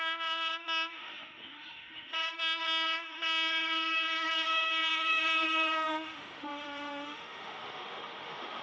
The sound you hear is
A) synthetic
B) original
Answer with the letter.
A